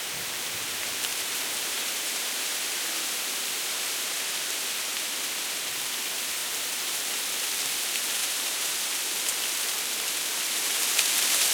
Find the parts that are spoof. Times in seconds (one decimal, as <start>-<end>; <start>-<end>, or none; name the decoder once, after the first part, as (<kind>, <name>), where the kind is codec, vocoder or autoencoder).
1.1-2.8 (vocoder, BigVGAN v2); 6.4-7.2; 8.2-8.9